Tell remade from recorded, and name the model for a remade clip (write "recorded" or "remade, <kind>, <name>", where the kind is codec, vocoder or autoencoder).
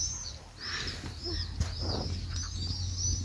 recorded